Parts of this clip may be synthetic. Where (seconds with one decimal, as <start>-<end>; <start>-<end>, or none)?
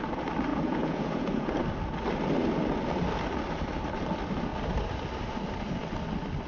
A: 0.5-1.5